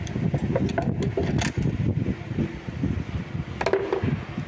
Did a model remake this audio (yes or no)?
no